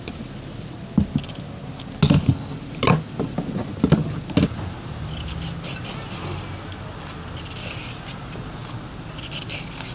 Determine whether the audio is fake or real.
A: real